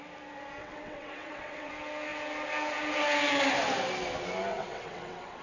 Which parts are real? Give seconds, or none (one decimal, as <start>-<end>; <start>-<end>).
0.0-0.6; 1.7-4.5